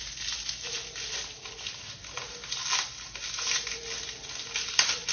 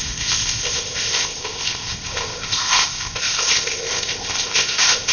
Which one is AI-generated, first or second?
second